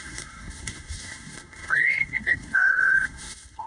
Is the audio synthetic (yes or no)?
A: yes